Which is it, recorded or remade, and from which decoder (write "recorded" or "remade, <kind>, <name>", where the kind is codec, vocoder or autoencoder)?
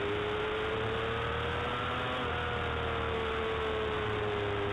recorded